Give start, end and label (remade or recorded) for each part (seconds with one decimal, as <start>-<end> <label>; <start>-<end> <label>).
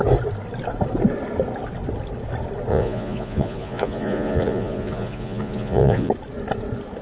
0.0-2.7 recorded; 2.7-6.1 remade; 6.1-7.0 recorded